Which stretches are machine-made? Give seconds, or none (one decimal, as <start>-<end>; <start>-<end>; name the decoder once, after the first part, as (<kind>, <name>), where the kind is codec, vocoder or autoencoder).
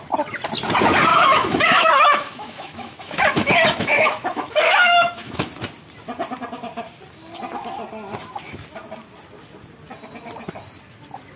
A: 1.1-5.5 (autoencoder, DAC-VAE)